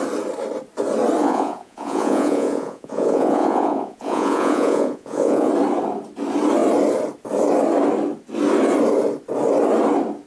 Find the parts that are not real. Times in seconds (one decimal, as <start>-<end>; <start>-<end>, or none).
1.2-5.5